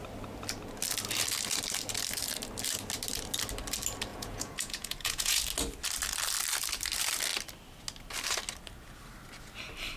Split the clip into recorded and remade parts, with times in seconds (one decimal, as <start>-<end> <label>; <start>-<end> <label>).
0.0-4.1 recorded; 4.1-5.4 remade; 5.4-10.0 recorded